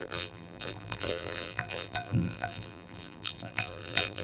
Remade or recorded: remade